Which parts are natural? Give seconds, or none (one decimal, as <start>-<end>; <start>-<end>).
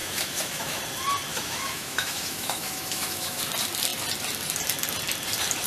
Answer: 0.8-1.3; 3.4-5.7